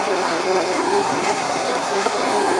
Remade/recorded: remade